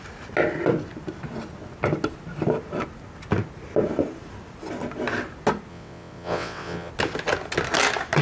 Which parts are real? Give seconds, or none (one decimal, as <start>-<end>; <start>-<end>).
0.0-5.7; 6.9-8.2